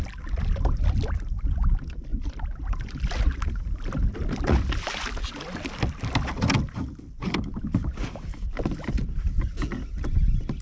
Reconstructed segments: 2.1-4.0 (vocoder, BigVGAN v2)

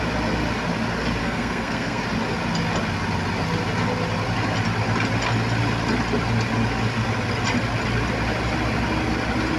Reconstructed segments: 1.2-2.0 (codec, SNAC)